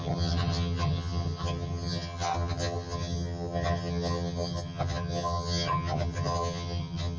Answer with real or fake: fake